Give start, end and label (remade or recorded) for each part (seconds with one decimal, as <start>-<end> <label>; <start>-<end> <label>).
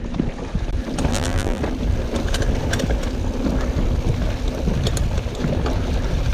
0.0-1.1 recorded; 1.1-1.6 remade; 1.6-6.3 recorded